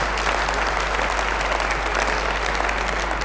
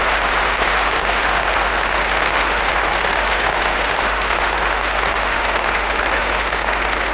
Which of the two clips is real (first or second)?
first